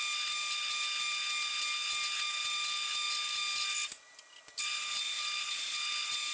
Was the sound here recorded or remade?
recorded